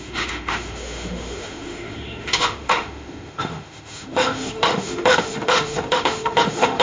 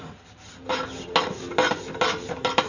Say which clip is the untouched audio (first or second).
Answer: second